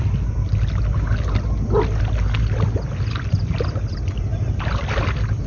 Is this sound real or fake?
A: real